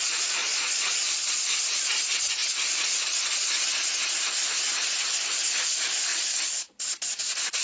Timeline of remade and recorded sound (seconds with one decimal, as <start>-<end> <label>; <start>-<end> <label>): 0.0-0.4 recorded; 0.4-1.4 remade; 1.4-7.6 recorded